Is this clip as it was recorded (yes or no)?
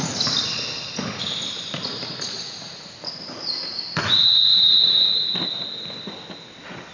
yes